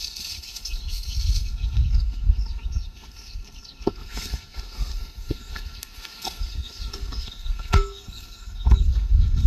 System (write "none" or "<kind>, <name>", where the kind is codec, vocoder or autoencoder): codec, SNAC